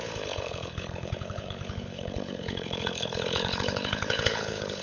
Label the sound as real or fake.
fake